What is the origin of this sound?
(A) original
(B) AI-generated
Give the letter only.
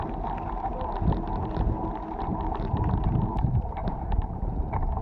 B